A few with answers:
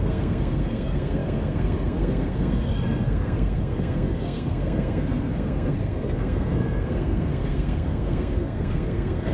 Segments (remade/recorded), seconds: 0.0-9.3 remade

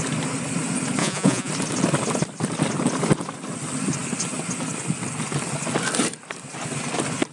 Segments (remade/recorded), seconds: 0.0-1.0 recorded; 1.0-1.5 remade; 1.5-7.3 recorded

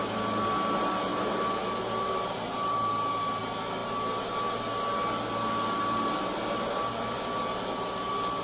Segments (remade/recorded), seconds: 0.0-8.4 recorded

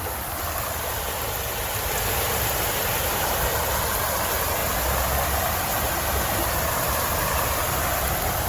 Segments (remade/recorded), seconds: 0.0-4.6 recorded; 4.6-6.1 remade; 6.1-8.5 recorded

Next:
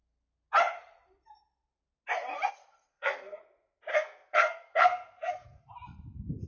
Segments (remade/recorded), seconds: 0.0-2.9 recorded; 2.9-3.4 remade; 3.4-3.9 recorded; 3.9-5.7 remade; 5.7-6.5 recorded

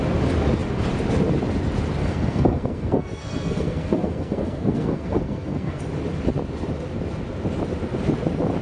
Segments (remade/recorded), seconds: 0.0-2.0 recorded; 2.0-5.8 remade; 5.8-8.6 recorded